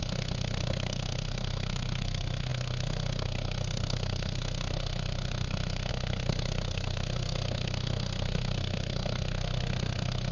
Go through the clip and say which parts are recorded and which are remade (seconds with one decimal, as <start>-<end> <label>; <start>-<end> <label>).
0.0-10.3 remade